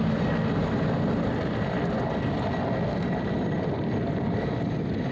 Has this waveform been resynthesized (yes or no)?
no